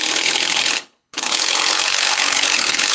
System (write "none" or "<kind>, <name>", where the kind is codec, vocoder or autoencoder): codec, HILCodec